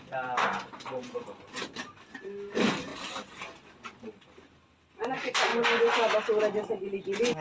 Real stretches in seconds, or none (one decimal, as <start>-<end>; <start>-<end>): 0.0-7.4